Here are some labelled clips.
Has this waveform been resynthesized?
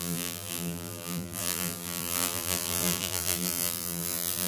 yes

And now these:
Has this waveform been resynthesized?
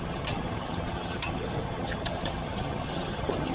yes